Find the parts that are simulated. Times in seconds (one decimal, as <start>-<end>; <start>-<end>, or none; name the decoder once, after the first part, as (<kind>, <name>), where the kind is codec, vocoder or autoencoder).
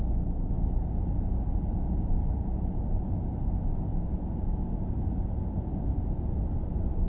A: 2.2-3.1 (vocoder, BigVGAN v2); 3.9-7.1